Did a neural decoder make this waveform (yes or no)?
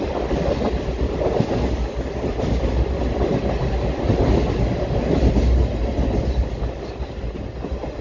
no